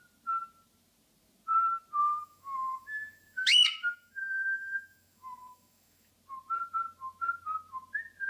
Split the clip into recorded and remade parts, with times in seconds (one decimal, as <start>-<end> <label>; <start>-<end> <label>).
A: 0.0-2.0 recorded; 2.0-6.1 remade; 6.1-8.3 recorded